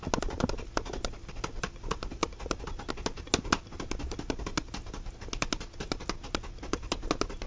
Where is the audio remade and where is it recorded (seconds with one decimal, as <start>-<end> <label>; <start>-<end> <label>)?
0.0-7.5 recorded